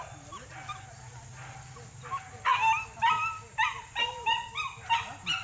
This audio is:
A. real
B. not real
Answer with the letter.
A